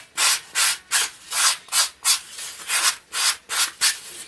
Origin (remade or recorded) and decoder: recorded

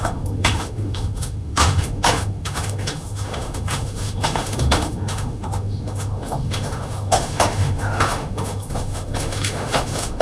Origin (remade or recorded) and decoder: remade, autoencoder, DAC-VAE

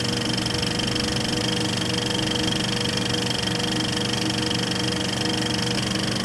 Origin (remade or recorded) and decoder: recorded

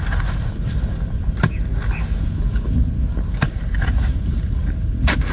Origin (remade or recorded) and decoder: recorded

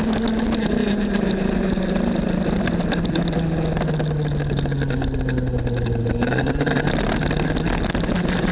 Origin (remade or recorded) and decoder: recorded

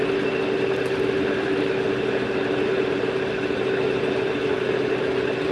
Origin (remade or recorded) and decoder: recorded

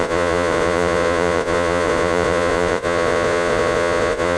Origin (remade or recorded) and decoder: remade, vocoder, Vocos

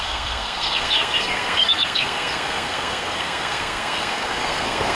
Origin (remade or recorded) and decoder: remade, codec, SNAC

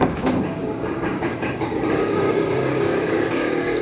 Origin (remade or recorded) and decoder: remade, codec, DAC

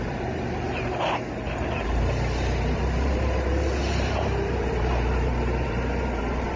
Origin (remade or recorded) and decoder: remade, vocoder, BigVGAN v2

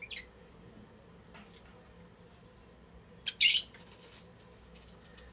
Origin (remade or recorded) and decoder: recorded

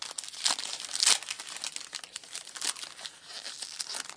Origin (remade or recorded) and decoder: recorded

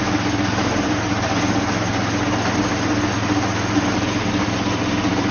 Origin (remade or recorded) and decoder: recorded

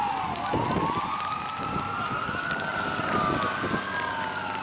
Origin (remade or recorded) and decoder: recorded